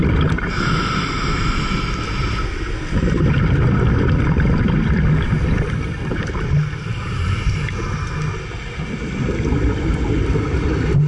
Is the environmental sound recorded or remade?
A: recorded